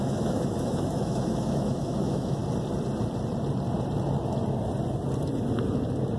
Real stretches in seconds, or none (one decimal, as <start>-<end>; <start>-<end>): 2.4-6.2